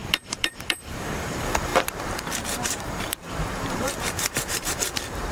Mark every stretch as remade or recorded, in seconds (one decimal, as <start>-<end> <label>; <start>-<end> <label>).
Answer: 0.0-5.3 remade

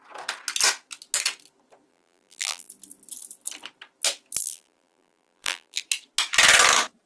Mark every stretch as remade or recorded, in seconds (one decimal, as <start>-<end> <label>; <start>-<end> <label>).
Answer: 0.0-1.9 recorded; 1.9-2.7 remade; 2.7-4.4 recorded; 4.4-5.8 remade; 5.8-7.1 recorded

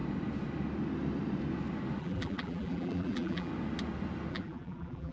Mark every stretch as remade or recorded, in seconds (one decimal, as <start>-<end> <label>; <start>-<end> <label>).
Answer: 0.0-2.0 recorded; 2.0-3.5 remade; 3.5-4.3 recorded; 4.3-5.1 remade

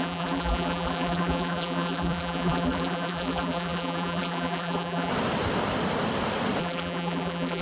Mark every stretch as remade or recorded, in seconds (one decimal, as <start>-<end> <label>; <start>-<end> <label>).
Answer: 0.0-5.1 remade; 5.1-6.6 recorded; 6.6-7.6 remade